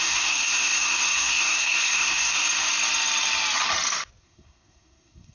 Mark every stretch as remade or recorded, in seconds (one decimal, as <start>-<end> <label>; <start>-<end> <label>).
0.0-2.4 remade; 2.4-4.2 recorded; 4.2-5.3 remade